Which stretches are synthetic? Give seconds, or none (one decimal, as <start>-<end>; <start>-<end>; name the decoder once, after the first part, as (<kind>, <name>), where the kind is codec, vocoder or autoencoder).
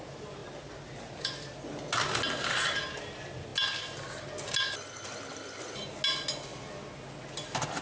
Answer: none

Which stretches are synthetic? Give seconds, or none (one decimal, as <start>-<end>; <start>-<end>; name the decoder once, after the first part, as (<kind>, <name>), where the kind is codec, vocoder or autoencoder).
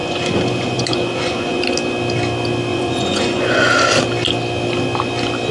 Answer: 0.0-1.6 (vocoder, Vocos); 2.7-3.7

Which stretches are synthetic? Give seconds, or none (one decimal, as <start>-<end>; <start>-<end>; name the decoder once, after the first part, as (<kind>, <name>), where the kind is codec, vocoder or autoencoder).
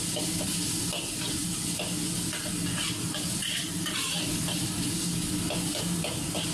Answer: none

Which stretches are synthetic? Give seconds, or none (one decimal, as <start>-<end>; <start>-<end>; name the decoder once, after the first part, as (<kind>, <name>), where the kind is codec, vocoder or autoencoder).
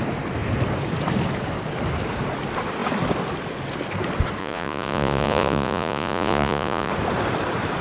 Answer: 4.4-6.9 (vocoder, Vocos)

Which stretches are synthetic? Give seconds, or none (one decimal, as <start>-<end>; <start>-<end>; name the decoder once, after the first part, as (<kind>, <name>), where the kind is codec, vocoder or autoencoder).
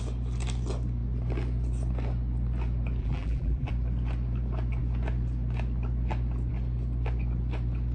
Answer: 3.0-3.7 (vocoder, BigVGAN v2)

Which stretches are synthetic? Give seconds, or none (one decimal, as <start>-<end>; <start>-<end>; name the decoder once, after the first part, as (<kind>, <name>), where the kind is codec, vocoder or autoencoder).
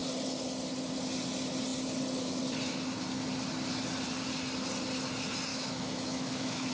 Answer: 5.5-6.7 (autoencoder, DAC-VAE)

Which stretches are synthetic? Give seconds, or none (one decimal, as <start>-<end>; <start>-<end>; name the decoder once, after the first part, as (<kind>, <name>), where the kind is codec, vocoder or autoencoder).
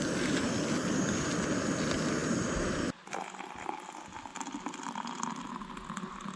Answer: 4.3-5.4 (vocoder, BigVGAN v2)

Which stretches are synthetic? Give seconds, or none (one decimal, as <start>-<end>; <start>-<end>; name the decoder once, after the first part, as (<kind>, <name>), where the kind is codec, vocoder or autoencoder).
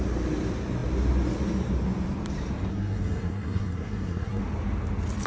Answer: 2.7-4.4 (codec, SNAC)